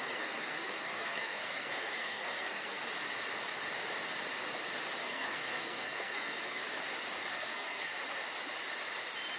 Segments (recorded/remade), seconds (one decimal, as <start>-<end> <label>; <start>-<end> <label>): 0.0-2.8 remade; 2.8-5.0 recorded; 5.0-6.6 remade; 6.6-7.3 recorded; 7.3-7.9 remade; 7.9-9.4 recorded

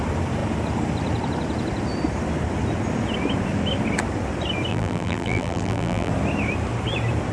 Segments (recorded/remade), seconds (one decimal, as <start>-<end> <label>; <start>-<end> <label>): 0.0-4.7 recorded; 4.7-6.1 remade; 6.1-7.3 recorded

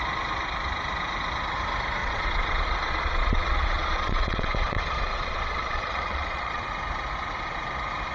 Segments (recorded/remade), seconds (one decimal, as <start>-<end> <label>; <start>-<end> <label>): 0.0-2.0 recorded; 2.0-6.6 remade; 6.6-8.1 recorded

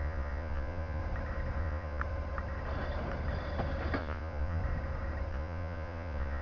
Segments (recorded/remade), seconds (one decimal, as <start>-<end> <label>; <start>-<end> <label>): 0.0-1.0 remade; 1.0-1.6 recorded; 1.6-2.0 remade; 2.0-4.0 recorded; 4.0-4.6 remade; 4.6-5.3 recorded; 5.3-6.4 remade